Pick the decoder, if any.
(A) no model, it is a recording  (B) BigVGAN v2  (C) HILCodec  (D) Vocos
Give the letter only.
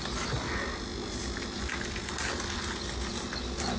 A